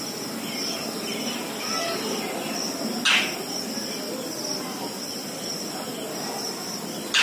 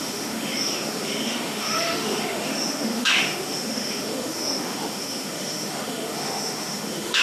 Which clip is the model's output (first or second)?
second